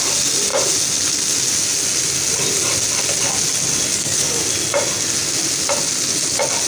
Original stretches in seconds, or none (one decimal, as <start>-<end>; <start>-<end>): 0.0-3.9; 4.4-6.7